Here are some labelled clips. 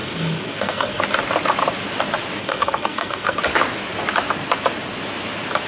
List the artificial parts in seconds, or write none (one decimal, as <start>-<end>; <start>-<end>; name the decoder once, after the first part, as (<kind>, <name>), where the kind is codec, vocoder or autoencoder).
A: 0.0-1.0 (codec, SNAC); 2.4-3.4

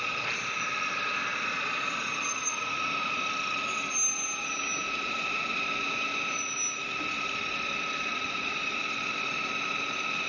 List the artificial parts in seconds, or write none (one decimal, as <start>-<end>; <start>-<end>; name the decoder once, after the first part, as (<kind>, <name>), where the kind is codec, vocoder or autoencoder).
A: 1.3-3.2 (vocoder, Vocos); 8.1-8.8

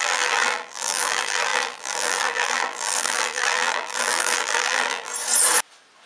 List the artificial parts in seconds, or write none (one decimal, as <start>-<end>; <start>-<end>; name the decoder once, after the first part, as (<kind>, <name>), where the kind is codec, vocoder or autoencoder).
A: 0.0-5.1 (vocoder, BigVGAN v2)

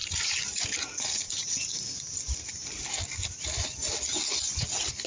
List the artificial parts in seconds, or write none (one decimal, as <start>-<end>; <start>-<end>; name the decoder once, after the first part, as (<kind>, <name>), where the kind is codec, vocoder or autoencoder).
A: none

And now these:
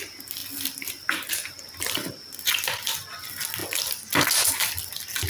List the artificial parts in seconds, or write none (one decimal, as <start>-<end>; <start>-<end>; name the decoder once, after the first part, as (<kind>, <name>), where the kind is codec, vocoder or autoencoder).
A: none

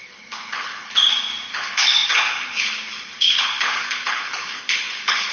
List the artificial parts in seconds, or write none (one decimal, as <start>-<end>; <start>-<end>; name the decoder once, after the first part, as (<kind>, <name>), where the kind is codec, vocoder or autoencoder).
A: 0.0-1.0 (codec, HILCodec); 1.5-5.3

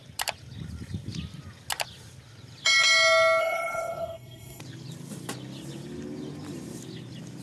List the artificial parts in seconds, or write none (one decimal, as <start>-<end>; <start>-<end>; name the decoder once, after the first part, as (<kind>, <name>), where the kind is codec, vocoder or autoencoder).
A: 3.4-4.6 (codec, SNAC)